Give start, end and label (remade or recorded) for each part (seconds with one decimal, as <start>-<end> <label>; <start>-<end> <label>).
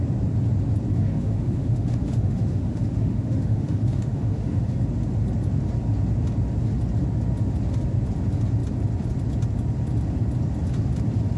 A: 0.0-0.9 recorded; 0.9-4.8 remade; 4.8-11.4 recorded